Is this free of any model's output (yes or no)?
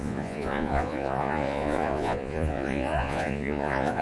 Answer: no